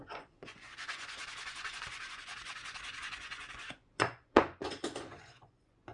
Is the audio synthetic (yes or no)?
yes